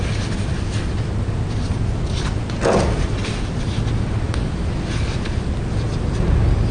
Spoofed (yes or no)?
no